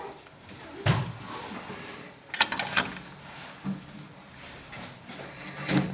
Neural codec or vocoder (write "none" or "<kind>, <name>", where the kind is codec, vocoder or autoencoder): none